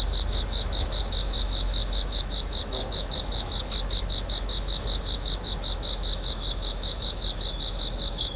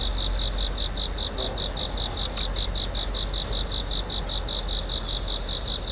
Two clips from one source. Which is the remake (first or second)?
first